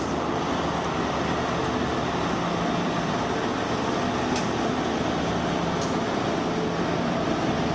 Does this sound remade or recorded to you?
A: recorded